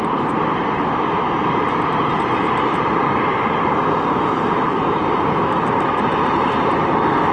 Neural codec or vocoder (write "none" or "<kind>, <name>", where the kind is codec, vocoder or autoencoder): vocoder, BigVGAN v2